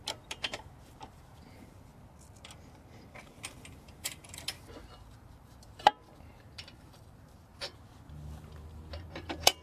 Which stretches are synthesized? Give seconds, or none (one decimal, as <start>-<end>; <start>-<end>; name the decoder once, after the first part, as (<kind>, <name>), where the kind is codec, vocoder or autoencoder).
0.0-1.9 (vocoder, BigVGAN v2); 3.6-7.5; 8.9-9.6